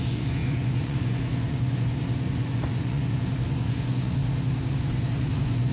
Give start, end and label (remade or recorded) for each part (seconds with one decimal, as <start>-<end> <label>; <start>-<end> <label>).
0.0-4.2 remade; 4.2-4.7 recorded; 4.7-5.7 remade